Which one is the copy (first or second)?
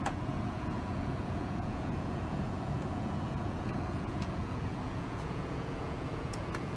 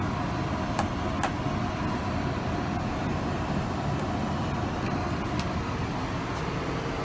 first